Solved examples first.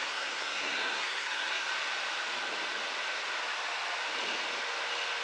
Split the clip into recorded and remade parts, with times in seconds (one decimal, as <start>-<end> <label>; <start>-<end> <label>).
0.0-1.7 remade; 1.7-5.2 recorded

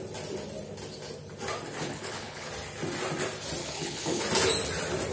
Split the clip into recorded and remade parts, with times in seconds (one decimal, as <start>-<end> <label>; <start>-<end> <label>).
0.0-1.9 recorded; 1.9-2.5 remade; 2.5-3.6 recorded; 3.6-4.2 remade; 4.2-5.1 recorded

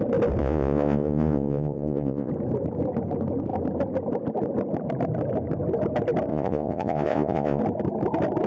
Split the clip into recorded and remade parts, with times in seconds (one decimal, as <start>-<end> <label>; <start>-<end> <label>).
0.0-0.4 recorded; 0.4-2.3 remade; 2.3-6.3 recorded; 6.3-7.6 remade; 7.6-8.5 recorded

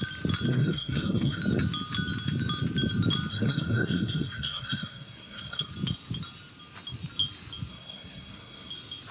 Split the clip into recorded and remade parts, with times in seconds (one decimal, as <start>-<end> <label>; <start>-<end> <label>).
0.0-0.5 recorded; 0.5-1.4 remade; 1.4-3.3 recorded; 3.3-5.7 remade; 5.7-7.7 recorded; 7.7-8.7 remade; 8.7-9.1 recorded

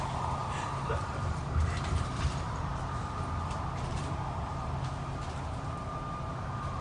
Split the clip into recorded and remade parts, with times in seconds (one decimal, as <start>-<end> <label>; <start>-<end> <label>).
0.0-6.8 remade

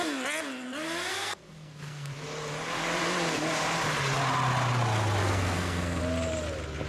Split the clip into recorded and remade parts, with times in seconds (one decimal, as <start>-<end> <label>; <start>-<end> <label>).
0.0-1.1 recorded; 1.1-2.1 remade; 2.1-5.2 recorded; 5.2-6.0 remade; 6.0-6.9 recorded

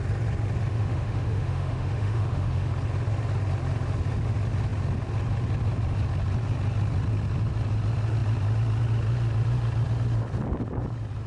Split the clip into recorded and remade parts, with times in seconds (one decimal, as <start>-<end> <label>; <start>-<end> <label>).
0.0-0.7 recorded; 0.7-2.7 remade; 2.7-11.3 recorded